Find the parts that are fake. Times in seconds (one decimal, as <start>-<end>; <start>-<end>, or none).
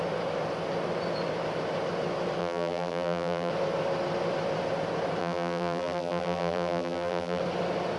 2.4-3.5; 5.2-7.4